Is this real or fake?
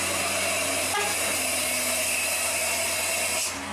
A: real